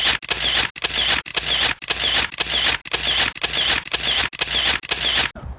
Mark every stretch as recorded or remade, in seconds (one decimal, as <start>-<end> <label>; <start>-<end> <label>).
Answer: 0.0-5.6 recorded